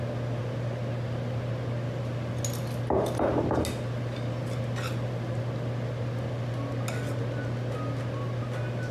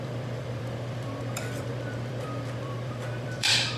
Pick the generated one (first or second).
second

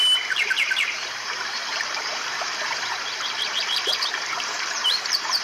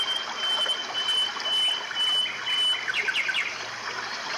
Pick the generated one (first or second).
first